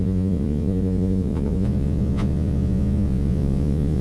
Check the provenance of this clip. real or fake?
fake